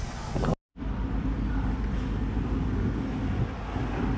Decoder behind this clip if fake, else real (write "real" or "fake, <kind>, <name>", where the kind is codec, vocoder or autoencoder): real